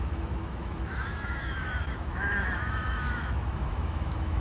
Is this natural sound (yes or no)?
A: no